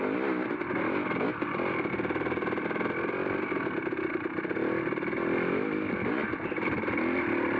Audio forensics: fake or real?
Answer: real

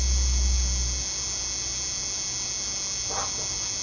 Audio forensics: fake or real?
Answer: real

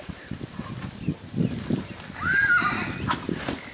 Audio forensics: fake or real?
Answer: real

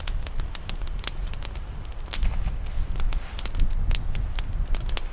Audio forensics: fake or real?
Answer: real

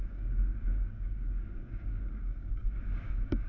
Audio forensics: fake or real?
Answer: fake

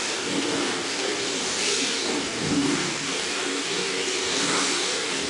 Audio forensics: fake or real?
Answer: fake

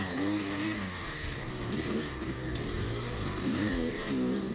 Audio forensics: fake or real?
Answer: fake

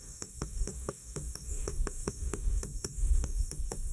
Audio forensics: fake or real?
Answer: fake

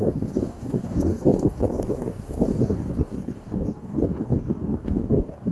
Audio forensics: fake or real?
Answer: fake